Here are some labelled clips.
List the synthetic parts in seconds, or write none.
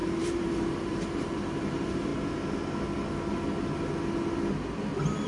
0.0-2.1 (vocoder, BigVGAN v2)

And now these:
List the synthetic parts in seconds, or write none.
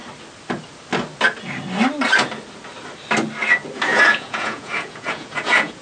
3.9-5.8 (vocoder, Vocos)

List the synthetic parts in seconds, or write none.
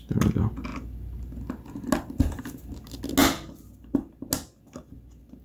none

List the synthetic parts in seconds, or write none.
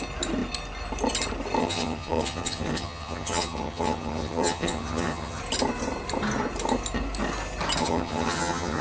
1.6-5.4 (vocoder, HiFi-GAN); 7.8-8.8